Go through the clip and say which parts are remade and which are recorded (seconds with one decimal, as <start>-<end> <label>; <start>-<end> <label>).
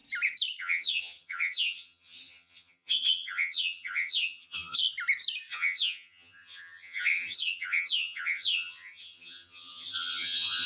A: 0.0-0.6 recorded; 0.6-4.8 remade; 4.8-5.5 recorded; 5.5-10.7 remade